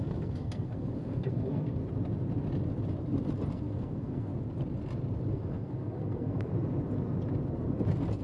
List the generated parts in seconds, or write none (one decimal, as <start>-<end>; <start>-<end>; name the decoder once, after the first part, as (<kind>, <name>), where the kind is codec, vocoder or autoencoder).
0.0-1.8 (codec, SNAC); 3.5-4.3; 5.3-6.5